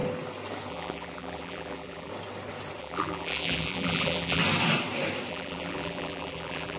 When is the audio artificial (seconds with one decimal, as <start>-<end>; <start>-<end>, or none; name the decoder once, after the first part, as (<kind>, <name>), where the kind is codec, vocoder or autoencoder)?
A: 0.7-2.1 (vocoder, BigVGAN v2); 2.8-4.4; 5.3-6.8

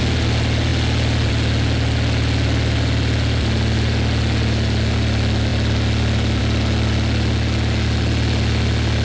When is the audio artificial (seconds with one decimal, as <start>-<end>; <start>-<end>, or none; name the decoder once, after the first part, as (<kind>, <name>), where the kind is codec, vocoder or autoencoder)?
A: none